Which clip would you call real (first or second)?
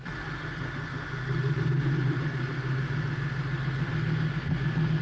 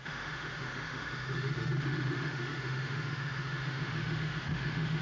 first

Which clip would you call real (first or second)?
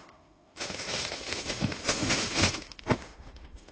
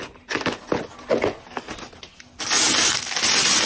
second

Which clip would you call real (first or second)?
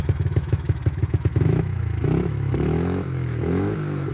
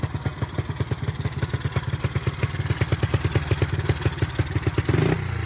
second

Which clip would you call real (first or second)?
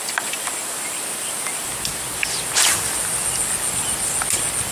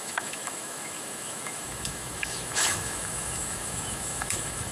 first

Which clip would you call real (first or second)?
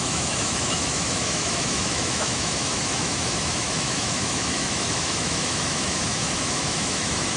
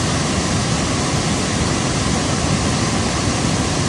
second